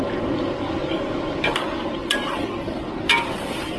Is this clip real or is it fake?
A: real